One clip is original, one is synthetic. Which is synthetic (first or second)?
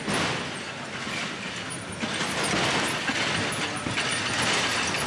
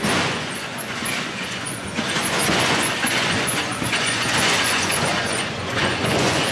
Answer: second